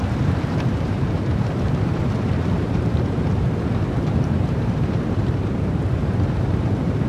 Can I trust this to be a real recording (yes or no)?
no